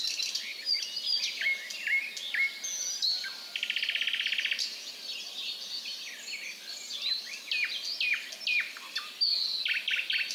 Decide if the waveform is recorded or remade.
recorded